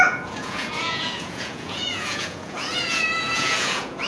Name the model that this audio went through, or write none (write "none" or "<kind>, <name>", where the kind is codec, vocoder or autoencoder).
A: vocoder, Vocos